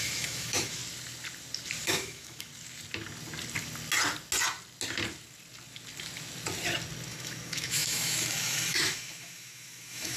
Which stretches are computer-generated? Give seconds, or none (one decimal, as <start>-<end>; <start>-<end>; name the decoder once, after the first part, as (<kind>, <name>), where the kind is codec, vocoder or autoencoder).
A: 0.0-0.8 (autoencoder, DAC-VAE); 1.8-2.5; 7.1-10.2